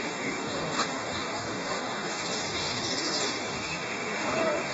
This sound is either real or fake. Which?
fake